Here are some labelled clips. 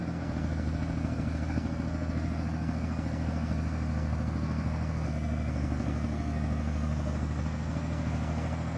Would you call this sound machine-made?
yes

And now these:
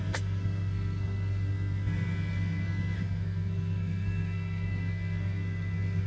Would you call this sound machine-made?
yes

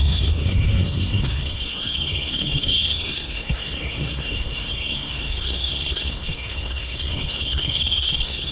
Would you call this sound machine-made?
yes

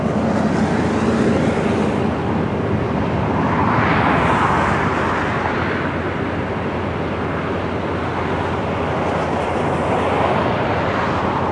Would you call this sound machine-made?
no